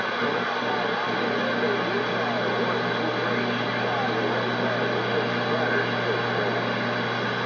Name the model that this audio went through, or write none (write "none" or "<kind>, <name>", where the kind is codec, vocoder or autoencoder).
none